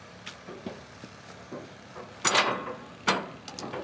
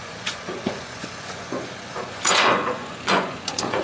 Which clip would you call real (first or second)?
first